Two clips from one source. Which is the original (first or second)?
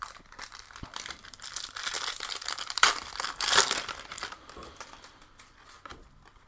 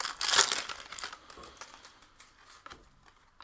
second